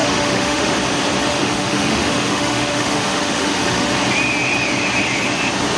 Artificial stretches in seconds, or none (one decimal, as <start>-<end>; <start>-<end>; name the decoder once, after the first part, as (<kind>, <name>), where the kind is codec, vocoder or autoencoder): 0.0-0.7 (autoencoder, DAC-VAE); 1.3-3.9